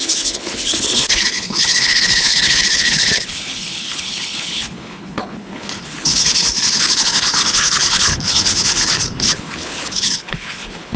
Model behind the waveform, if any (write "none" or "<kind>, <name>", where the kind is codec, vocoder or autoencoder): codec, HILCodec